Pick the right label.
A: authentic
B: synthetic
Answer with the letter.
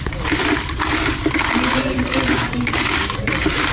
B